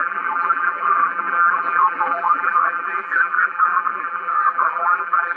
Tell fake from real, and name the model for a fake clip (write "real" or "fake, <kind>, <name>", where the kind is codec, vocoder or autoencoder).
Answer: fake, vocoder, BigVGAN v2